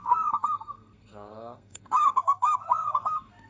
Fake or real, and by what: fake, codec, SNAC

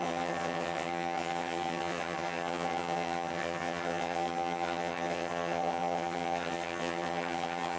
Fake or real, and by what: fake, vocoder, HiFi-GAN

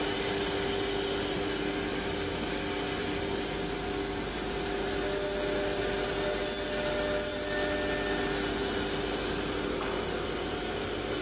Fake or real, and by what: real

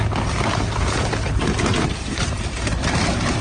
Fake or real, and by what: real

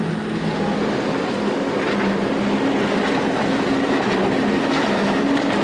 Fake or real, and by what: real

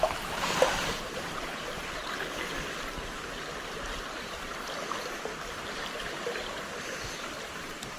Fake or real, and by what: real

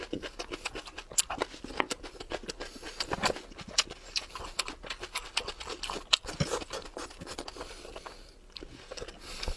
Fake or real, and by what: real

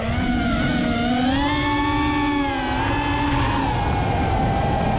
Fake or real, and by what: real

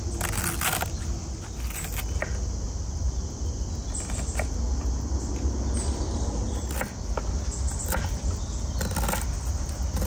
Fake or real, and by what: real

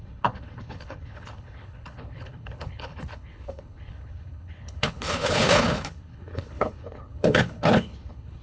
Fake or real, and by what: fake, codec, HILCodec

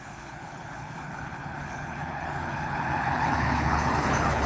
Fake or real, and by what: fake, codec, HILCodec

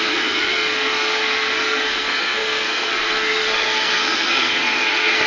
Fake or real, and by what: fake, codec, SNAC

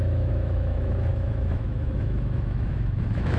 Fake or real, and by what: fake, autoencoder, DAC-VAE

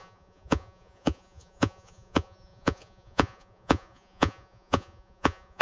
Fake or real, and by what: fake, vocoder, Vocos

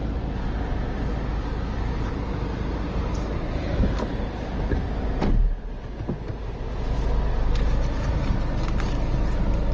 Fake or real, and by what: real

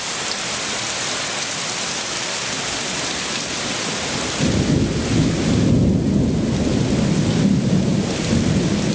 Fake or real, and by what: real